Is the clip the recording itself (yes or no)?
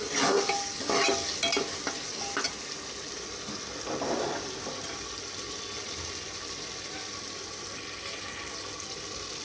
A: yes